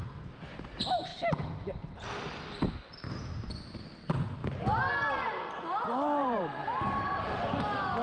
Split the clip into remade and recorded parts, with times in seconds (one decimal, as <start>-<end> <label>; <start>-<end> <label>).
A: 0.0-4.4 recorded; 4.4-4.9 remade; 4.9-6.2 recorded; 6.2-7.0 remade; 7.0-8.0 recorded